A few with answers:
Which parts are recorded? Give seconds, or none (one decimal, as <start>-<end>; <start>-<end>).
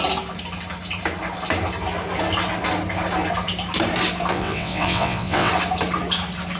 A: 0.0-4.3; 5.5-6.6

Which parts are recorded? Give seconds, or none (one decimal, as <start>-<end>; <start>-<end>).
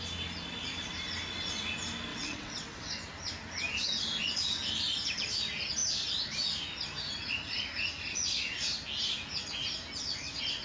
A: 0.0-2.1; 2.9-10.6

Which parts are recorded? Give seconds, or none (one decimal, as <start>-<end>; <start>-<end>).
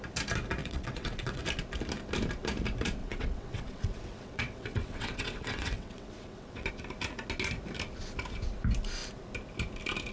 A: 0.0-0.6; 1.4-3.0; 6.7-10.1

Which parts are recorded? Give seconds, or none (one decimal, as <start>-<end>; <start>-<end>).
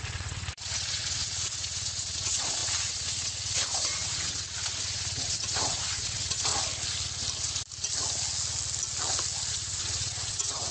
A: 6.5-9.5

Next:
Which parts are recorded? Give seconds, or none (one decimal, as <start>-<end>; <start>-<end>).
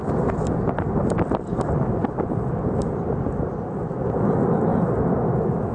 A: 0.0-5.7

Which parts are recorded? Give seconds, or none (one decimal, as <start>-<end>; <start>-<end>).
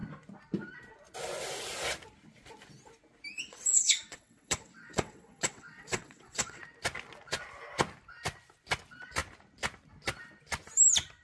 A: 0.0-3.4; 6.6-11.2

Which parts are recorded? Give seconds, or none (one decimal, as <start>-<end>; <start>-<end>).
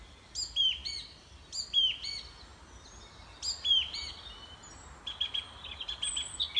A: 0.0-6.6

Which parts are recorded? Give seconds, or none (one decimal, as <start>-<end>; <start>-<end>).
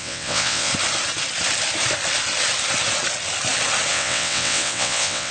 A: 0.7-3.9